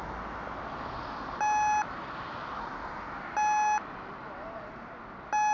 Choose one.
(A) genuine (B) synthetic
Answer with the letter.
A